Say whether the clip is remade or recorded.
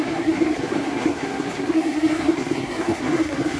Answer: remade